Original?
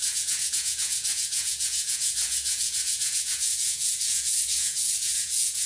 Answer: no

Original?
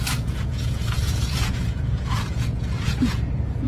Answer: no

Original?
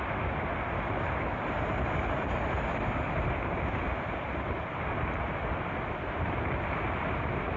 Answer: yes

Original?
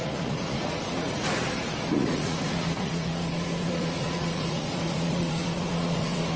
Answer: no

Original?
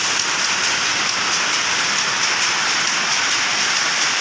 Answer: yes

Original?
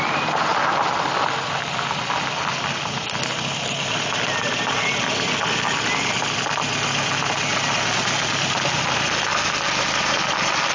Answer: yes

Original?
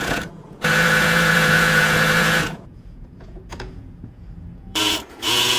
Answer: no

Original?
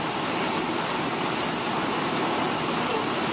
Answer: yes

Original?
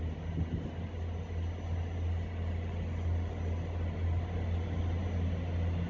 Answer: yes